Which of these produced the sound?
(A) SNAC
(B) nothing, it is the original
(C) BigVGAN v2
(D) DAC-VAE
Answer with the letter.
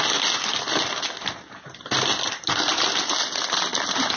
B